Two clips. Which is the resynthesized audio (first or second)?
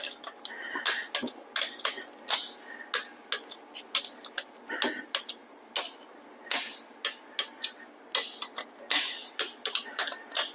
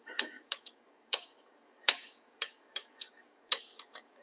second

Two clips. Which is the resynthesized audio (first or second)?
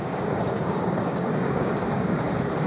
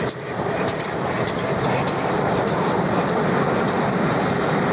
first